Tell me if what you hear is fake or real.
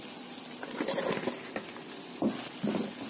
real